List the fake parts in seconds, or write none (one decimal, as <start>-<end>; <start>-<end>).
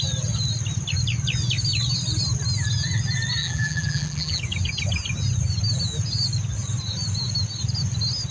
3.4-4.4